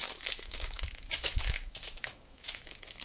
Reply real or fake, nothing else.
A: fake